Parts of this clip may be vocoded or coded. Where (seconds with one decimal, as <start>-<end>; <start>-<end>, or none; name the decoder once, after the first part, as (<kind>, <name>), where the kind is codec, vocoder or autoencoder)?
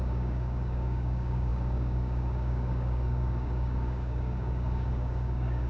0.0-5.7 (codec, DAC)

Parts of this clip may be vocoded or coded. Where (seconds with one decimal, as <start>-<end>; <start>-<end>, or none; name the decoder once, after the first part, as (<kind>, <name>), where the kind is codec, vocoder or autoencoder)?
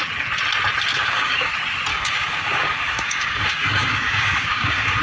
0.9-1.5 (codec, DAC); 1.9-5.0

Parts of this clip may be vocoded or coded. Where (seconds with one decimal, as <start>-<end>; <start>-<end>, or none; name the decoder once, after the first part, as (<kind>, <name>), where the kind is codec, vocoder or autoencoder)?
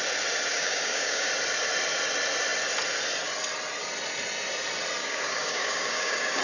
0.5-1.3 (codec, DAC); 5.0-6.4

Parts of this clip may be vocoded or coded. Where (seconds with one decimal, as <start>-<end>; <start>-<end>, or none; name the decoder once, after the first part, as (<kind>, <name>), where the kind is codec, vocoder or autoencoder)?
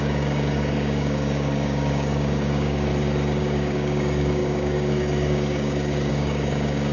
0.0-2.9 (codec, DAC); 3.4-6.9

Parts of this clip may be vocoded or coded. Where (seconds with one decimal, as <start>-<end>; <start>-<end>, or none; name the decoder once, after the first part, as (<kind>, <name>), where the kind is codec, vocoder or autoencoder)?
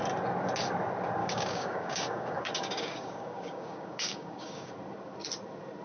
1.2-4.7 (codec, DAC)